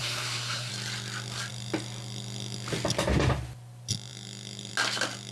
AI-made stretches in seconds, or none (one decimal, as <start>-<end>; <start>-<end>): 0.0-0.7